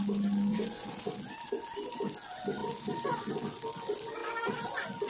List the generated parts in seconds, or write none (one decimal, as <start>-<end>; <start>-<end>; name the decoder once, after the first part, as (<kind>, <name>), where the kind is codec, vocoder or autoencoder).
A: 0.5-1.1 (vocoder, Vocos)